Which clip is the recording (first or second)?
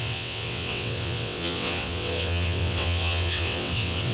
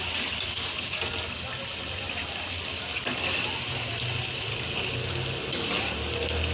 second